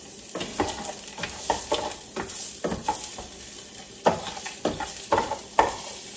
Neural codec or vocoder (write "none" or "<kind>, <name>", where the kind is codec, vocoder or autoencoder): none